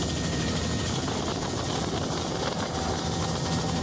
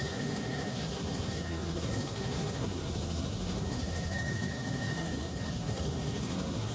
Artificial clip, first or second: second